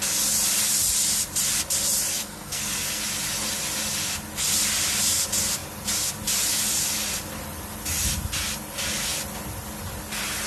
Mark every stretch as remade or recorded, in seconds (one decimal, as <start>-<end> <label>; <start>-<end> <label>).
0.0-2.1 recorded; 2.1-3.0 remade; 3.0-10.5 recorded